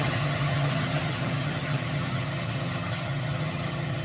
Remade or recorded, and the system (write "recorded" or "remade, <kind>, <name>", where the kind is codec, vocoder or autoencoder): remade, vocoder, HiFi-GAN